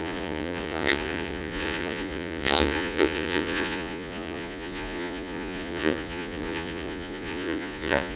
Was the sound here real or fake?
fake